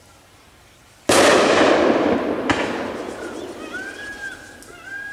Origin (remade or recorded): recorded